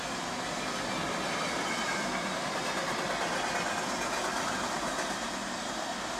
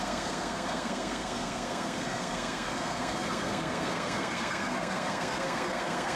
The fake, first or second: second